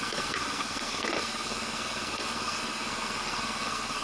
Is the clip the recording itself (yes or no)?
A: no